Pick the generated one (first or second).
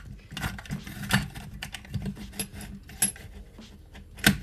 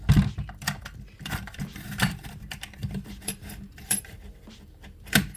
second